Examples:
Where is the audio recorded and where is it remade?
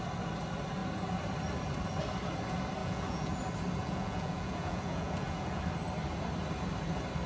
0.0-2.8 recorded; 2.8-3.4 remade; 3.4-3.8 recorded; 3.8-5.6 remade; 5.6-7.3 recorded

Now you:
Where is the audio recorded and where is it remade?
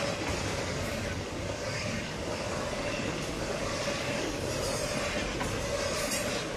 0.0-0.5 recorded; 0.5-4.5 remade; 4.5-6.6 recorded